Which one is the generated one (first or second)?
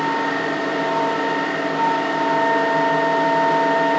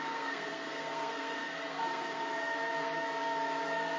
second